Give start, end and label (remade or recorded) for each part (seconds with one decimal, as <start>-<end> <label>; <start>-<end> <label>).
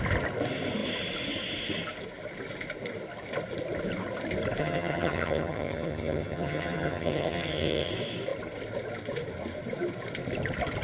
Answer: 0.0-4.6 recorded; 4.6-7.9 remade; 7.9-10.8 recorded